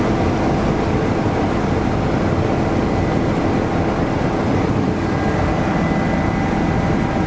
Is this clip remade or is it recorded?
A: recorded